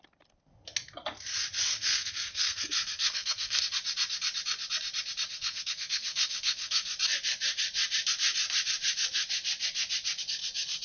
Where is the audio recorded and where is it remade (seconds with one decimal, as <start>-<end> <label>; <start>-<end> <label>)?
0.0-1.7 recorded; 1.7-3.6 remade; 3.6-5.3 recorded; 5.3-6.9 remade; 6.9-10.8 recorded